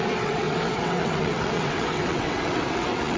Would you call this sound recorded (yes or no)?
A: no